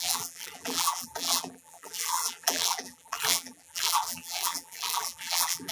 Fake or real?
fake